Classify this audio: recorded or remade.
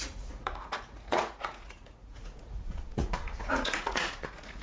remade